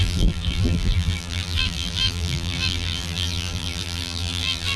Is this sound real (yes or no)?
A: no